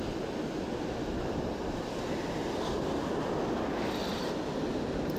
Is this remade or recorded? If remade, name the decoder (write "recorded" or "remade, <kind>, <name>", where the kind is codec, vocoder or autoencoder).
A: recorded